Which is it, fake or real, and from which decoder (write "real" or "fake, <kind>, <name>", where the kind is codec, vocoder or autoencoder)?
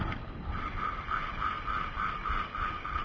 real